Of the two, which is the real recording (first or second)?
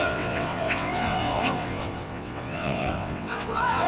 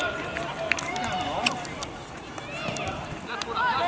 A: second